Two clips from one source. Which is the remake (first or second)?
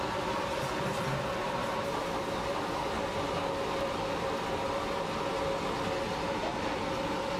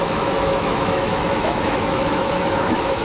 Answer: second